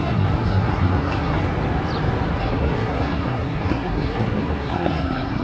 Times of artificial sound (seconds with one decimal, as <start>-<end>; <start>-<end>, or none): 0.0-1.4; 2.4-5.4